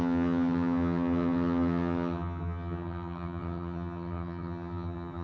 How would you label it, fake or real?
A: fake